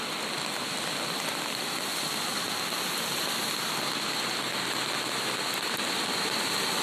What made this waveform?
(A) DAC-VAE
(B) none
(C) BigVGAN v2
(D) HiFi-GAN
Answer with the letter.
B